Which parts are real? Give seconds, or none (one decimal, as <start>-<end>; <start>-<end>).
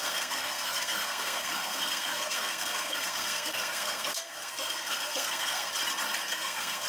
5.7-6.3